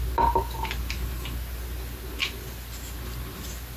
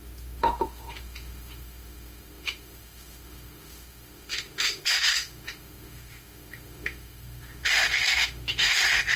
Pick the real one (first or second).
first